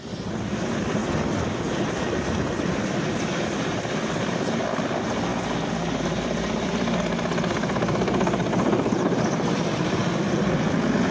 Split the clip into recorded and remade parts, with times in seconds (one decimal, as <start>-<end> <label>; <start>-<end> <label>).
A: 0.0-1.0 remade; 1.0-1.8 recorded; 1.8-5.3 remade; 5.3-6.0 recorded; 6.0-10.0 remade; 10.0-11.1 recorded